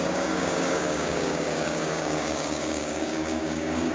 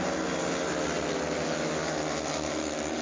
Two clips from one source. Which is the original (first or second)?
second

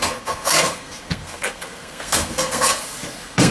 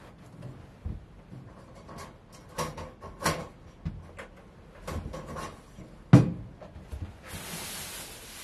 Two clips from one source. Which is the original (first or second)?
second